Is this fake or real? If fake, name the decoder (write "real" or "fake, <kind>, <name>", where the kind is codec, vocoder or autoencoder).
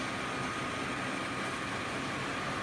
real